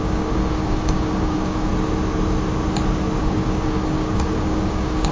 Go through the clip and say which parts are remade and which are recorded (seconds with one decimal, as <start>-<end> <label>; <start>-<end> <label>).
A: 0.0-1.7 remade; 1.7-3.2 recorded; 3.2-5.1 remade